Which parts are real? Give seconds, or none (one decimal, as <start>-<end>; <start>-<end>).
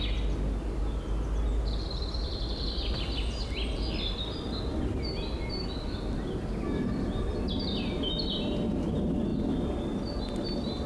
0.0-10.9